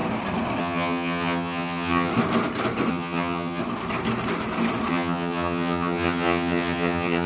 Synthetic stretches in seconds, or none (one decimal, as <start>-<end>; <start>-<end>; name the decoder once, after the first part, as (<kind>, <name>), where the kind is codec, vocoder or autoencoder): 0.6-2.1 (vocoder, HiFi-GAN); 2.9-3.6; 4.9-7.3